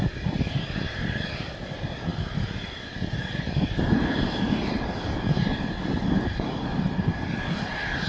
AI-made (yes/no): no